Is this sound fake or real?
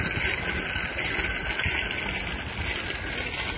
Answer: real